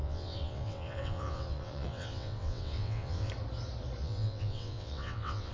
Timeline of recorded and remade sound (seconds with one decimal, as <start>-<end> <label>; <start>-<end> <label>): 0.0-3.3 remade; 3.3-4.0 recorded; 4.0-5.5 remade